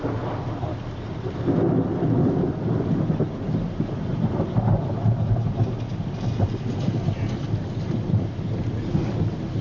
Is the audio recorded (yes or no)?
yes